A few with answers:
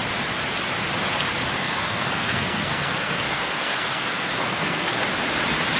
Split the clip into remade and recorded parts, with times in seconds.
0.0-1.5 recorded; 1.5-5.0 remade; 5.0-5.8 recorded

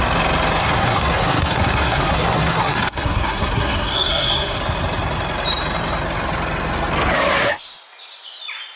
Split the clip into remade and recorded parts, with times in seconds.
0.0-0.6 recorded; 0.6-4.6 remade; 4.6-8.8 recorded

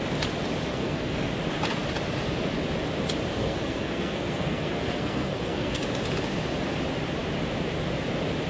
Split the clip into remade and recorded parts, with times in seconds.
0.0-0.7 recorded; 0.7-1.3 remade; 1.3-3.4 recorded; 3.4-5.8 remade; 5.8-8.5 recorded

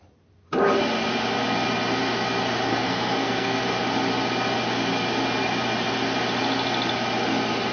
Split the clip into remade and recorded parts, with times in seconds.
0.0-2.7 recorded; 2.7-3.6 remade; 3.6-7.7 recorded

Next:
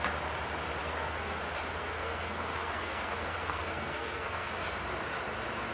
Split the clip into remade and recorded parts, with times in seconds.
0.0-0.8 recorded; 0.8-1.4 remade; 1.4-1.8 recorded; 1.8-4.5 remade; 4.5-5.7 recorded